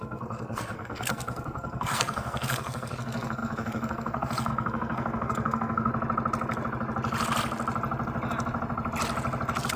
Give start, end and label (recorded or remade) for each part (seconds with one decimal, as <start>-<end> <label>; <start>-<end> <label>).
0.0-5.9 remade; 5.9-9.8 recorded